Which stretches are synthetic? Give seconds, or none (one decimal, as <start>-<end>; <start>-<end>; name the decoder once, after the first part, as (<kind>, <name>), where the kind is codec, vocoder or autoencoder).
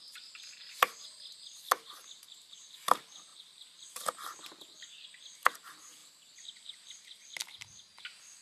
none